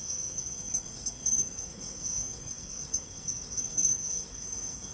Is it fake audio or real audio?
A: fake